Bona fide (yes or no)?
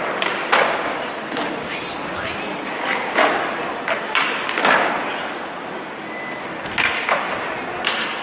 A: yes